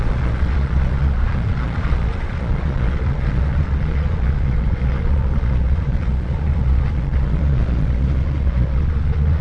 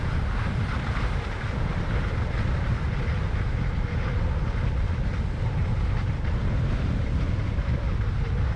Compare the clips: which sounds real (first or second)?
second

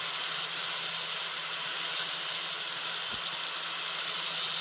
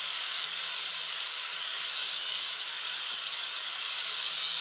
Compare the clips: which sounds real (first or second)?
first